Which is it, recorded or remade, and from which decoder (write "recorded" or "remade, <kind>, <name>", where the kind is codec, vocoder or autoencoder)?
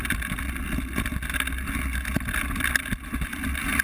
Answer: recorded